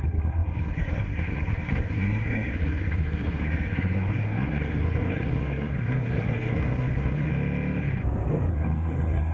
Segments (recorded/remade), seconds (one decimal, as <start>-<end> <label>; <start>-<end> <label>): 0.0-7.3 remade; 7.3-8.5 recorded; 8.5-9.3 remade